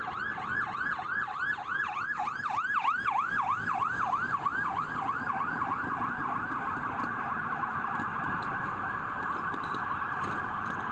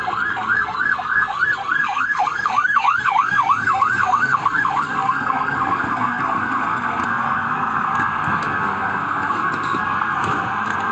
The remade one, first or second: second